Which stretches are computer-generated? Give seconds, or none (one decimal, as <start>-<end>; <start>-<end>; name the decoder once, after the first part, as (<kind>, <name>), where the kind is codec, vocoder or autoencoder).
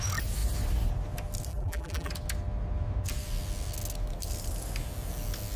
1.5-2.1 (vocoder, BigVGAN v2)